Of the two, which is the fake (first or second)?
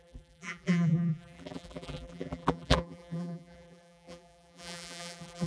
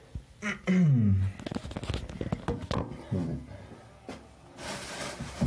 first